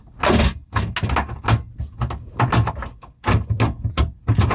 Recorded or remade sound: recorded